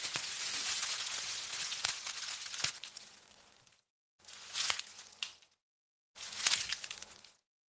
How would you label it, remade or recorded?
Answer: remade